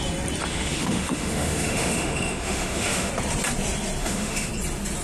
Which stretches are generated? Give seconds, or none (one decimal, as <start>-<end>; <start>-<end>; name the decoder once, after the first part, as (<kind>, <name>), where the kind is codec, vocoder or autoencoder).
0.5-3.1 (autoencoder, DAC-VAE); 4.0-4.5